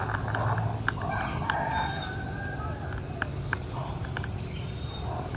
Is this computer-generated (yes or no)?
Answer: no